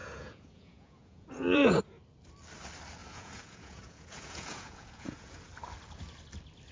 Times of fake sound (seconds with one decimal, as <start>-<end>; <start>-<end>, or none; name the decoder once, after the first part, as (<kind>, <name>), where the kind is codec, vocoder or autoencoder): 0.0-1.8 (vocoder, Vocos); 3.0-5.5